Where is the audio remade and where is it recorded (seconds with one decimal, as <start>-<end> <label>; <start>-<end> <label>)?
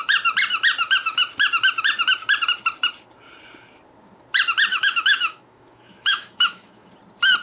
0.0-4.7 recorded; 4.7-6.9 remade; 6.9-7.4 recorded